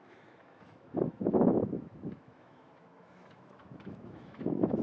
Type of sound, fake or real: fake